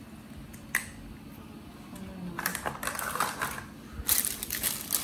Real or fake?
real